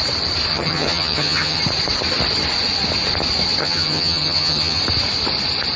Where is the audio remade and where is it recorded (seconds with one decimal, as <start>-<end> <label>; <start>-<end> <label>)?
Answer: 0.0-0.5 recorded; 0.5-1.6 remade; 1.6-3.6 recorded; 3.6-4.8 remade; 4.8-5.8 recorded